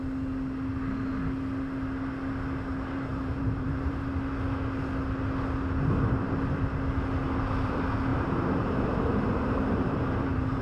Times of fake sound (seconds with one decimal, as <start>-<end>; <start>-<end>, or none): 3.1-3.9; 8.1-10.6